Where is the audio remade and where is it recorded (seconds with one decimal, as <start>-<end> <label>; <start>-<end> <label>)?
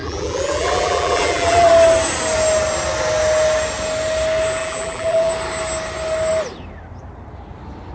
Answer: 0.0-1.7 remade; 1.7-4.6 recorded; 4.6-5.3 remade; 5.3-7.9 recorded